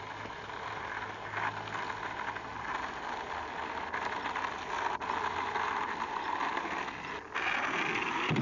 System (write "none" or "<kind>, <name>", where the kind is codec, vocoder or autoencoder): none